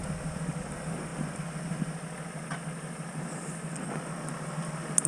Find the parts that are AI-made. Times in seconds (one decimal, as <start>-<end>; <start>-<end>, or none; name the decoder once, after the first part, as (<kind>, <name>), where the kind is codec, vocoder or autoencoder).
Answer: none